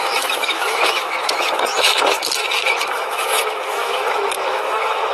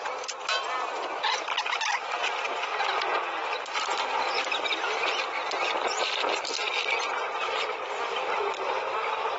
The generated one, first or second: first